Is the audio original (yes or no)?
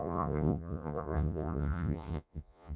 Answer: no